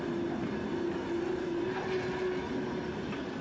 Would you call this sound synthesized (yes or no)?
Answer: no